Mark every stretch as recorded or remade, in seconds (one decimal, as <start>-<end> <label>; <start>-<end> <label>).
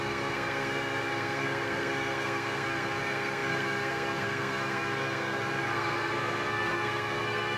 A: 0.0-7.6 remade